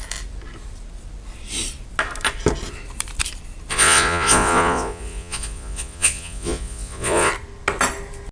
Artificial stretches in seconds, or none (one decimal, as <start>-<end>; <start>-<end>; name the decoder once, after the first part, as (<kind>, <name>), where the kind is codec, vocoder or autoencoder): 3.7-7.3 (vocoder, Vocos)

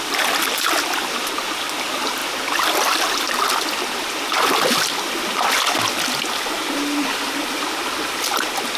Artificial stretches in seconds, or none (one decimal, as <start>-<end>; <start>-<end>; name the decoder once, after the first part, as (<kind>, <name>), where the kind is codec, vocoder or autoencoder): none

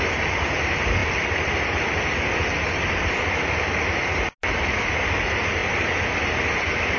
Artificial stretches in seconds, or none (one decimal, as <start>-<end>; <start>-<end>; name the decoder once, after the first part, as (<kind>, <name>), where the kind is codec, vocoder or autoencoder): none